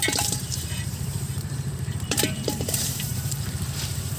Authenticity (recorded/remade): remade